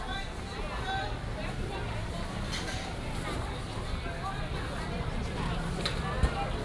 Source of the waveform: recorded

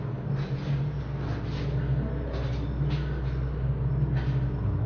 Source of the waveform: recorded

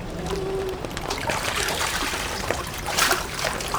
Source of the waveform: remade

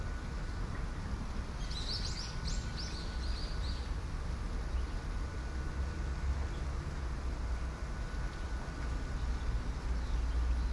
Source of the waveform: recorded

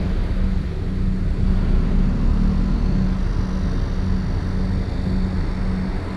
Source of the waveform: recorded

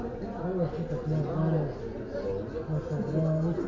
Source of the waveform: recorded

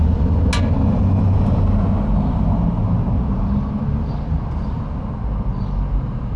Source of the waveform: recorded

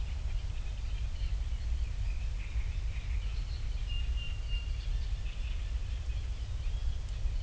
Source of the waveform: recorded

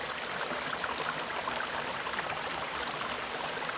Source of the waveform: remade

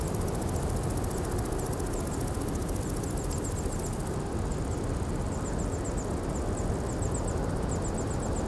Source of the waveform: recorded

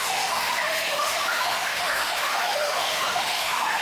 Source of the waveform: remade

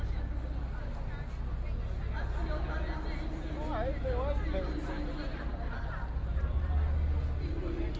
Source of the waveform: recorded